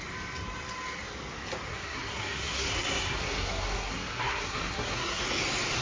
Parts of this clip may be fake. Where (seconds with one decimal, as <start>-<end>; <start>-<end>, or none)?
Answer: 1.7-5.2